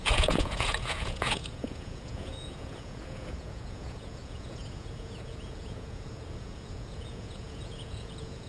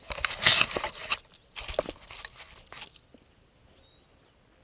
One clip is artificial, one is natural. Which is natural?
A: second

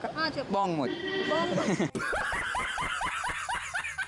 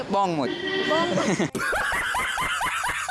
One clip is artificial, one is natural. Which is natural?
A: second